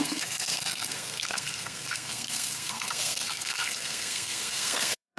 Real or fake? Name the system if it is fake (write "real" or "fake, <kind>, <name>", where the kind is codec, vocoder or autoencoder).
fake, codec, SNAC